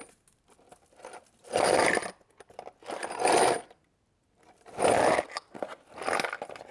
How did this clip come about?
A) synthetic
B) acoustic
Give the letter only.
B